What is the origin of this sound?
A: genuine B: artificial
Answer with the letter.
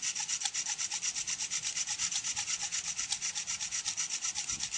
A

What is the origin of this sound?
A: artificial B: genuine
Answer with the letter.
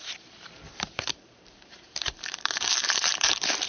A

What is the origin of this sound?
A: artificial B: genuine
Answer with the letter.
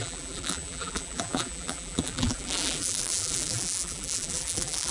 A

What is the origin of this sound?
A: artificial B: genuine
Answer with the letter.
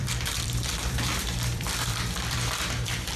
A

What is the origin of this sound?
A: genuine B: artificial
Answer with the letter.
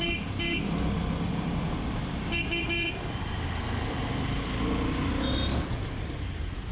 A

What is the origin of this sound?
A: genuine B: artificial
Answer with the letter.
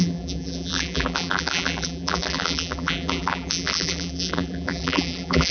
B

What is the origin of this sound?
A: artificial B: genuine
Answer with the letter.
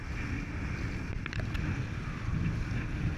B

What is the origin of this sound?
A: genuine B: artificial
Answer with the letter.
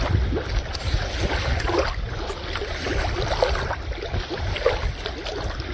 A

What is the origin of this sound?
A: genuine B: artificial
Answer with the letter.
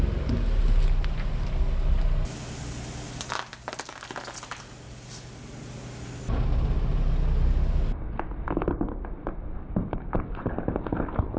A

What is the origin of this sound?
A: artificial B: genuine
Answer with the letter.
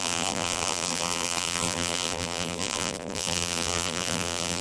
A